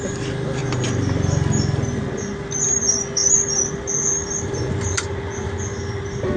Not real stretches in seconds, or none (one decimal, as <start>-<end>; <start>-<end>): none